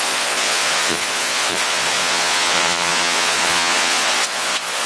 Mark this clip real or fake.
fake